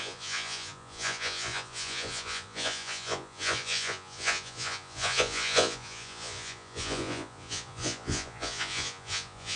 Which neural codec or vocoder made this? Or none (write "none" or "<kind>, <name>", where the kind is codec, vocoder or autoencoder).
vocoder, Vocos